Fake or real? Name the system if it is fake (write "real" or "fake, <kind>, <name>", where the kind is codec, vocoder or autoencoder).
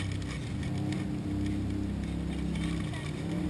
real